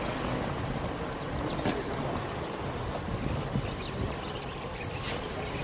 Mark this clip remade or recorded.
recorded